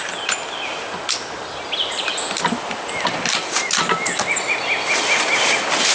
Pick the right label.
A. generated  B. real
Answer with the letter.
B